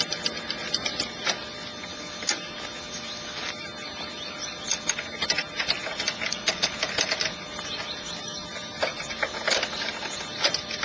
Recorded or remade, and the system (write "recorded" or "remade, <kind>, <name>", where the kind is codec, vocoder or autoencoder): recorded